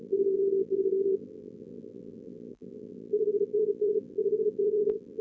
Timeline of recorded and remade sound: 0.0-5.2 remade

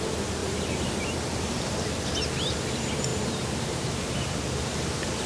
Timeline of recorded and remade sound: 0.0-0.4 recorded; 0.4-2.0 remade; 2.0-3.1 recorded; 3.1-5.3 remade

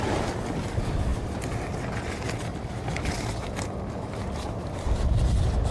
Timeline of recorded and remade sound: 0.0-5.7 recorded